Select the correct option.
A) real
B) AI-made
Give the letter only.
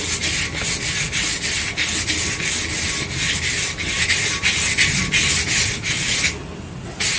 A